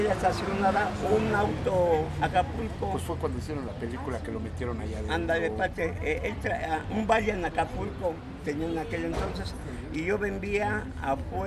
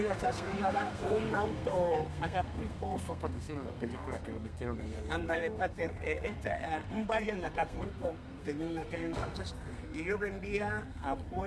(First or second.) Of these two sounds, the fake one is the second